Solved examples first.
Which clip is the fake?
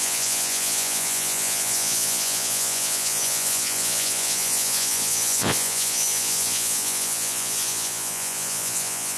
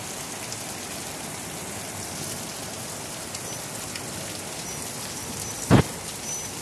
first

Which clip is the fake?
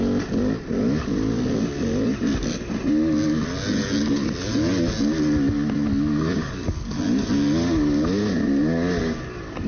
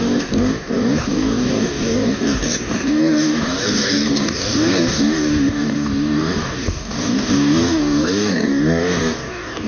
second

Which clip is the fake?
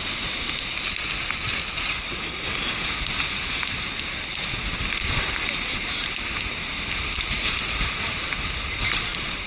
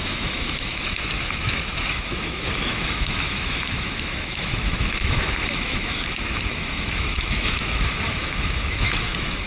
second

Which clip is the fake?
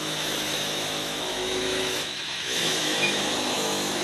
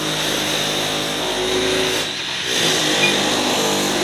first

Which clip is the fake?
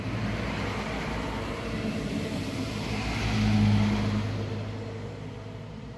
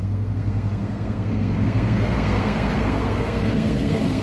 second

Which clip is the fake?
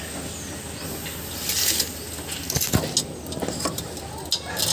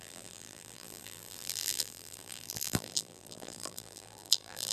second